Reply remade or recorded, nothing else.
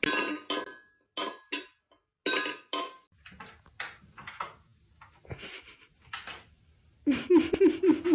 recorded